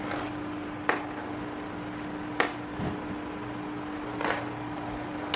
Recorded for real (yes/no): yes